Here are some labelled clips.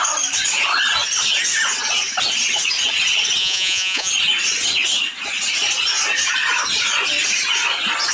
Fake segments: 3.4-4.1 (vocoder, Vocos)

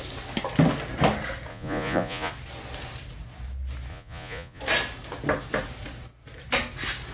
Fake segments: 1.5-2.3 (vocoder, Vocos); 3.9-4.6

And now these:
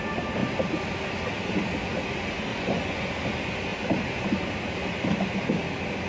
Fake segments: 2.5-3.0 (vocoder, Vocos)